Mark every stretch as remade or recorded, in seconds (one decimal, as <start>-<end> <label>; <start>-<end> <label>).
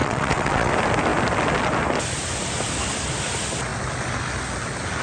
0.0-0.7 remade; 0.7-5.0 recorded